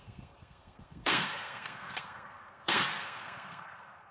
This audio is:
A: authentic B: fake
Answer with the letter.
B